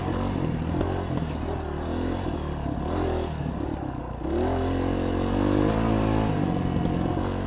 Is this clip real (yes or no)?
yes